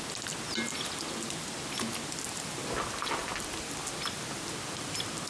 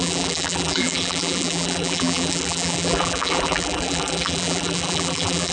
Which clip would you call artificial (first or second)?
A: second